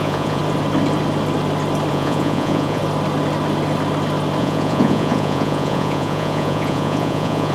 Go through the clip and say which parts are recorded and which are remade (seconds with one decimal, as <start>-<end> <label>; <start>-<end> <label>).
0.0-0.4 remade; 0.4-1.9 recorded; 1.9-2.8 remade; 2.8-4.4 recorded; 4.4-7.5 remade

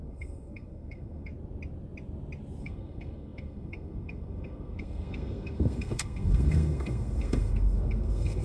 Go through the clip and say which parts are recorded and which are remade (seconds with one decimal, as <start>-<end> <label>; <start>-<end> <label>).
0.0-1.3 remade; 1.3-2.6 recorded; 2.6-8.4 remade

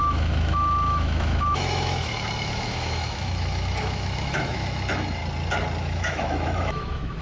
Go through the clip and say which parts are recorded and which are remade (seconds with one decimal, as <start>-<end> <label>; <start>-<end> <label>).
0.0-5.2 remade; 5.2-5.8 recorded; 5.8-7.2 remade

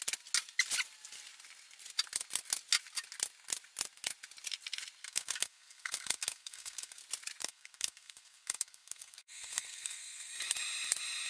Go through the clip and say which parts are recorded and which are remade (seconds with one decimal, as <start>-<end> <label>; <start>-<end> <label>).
0.0-5.0 recorded; 5.0-7.0 remade; 7.0-7.4 recorded; 7.4-10.3 remade; 10.3-11.3 recorded

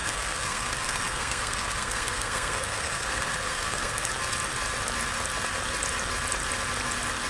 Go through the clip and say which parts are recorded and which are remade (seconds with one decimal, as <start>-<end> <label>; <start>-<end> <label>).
0.0-4.1 remade; 4.1-7.3 recorded

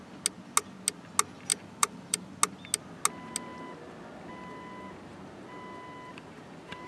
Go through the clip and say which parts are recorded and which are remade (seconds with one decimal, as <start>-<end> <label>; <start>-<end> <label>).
0.0-1.5 recorded; 1.5-2.3 remade; 2.3-6.1 recorded; 6.1-6.9 remade

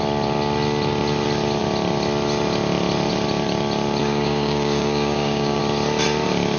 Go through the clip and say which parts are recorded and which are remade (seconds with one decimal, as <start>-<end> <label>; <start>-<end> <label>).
0.0-4.0 recorded; 4.0-5.6 remade; 5.6-6.6 recorded

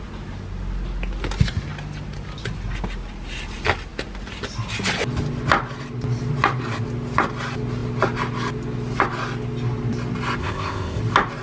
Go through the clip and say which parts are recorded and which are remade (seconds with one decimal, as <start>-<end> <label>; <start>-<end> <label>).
0.0-10.4 recorded; 10.4-11.0 remade; 11.0-11.4 recorded